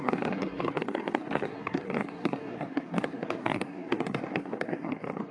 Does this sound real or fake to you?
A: fake